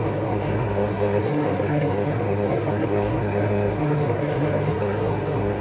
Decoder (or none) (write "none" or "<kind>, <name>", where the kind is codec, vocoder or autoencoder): codec, SNAC